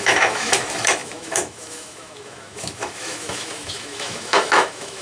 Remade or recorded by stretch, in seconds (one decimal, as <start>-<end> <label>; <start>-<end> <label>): 0.0-5.0 remade